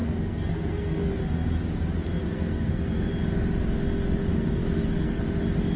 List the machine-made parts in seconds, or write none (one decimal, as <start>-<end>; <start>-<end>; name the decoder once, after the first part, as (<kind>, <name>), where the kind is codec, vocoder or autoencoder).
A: 0.0-1.1 (codec, SNAC); 2.2-3.1; 4.3-5.2